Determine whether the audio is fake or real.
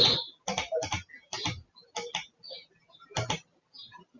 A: real